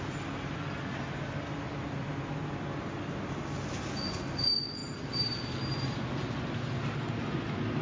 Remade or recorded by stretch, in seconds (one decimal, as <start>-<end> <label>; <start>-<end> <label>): 0.0-4.8 recorded; 4.8-7.8 remade